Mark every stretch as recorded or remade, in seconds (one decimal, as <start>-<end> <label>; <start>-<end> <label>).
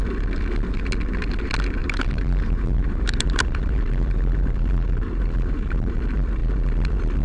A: 0.0-1.8 recorded; 1.8-6.0 remade; 6.0-7.2 recorded